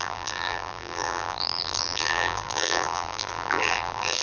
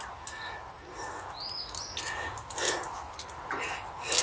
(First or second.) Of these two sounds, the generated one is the first